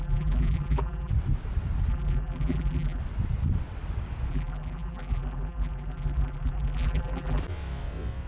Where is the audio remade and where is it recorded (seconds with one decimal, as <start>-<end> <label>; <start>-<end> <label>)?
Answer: 0.0-1.1 remade; 1.1-1.9 recorded; 1.9-3.0 remade; 3.0-4.3 recorded; 4.3-7.4 remade; 7.4-8.3 recorded